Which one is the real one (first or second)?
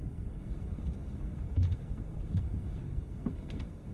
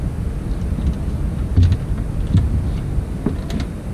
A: second